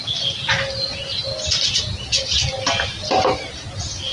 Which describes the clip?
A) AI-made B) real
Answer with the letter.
B